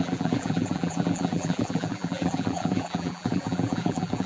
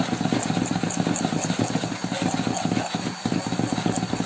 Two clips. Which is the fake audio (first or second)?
first